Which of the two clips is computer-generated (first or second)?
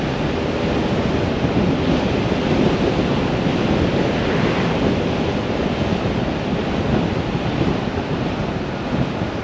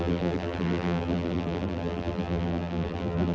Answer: second